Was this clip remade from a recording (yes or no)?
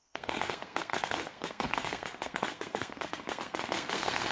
yes